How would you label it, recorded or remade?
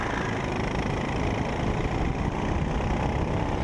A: recorded